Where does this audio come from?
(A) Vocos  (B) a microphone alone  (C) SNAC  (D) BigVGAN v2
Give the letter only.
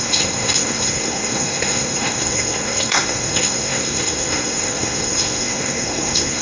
C